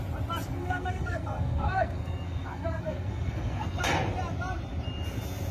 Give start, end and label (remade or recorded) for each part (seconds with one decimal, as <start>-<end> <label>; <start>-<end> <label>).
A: 0.0-0.5 recorded; 0.5-3.8 remade; 3.8-5.5 recorded